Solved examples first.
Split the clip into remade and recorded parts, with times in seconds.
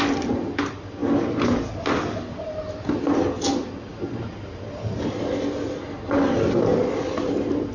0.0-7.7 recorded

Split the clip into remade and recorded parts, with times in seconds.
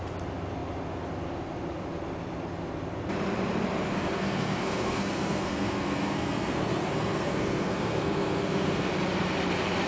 0.0-3.9 recorded; 3.9-8.9 remade; 8.9-9.9 recorded